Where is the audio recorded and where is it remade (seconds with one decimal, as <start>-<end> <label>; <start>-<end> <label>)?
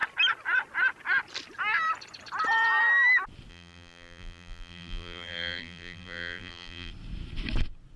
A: 0.0-3.5 recorded; 3.5-6.9 remade; 6.9-8.0 recorded